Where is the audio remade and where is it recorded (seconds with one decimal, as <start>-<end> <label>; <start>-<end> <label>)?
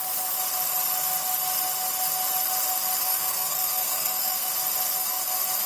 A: 0.0-3.0 recorded; 3.0-4.5 remade; 4.5-5.7 recorded